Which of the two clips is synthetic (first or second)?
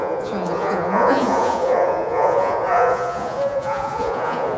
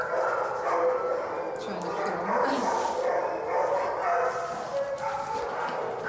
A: first